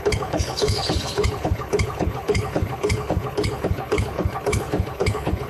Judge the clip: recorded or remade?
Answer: remade